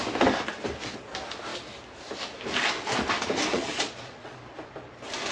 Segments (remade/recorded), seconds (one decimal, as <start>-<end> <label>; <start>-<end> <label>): 0.0-3.5 recorded; 3.5-4.4 remade; 4.4-5.3 recorded